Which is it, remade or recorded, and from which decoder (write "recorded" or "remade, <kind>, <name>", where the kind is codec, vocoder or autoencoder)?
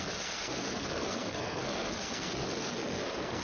remade, codec, SNAC